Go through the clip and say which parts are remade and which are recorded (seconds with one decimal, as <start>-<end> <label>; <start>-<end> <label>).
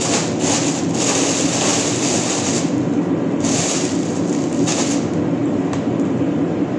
0.0-1.7 recorded; 1.7-4.5 remade; 4.5-6.8 recorded